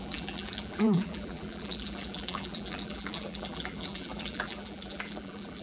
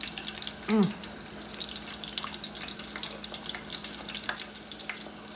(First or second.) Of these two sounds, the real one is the second